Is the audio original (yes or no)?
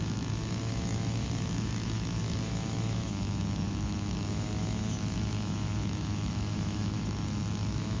no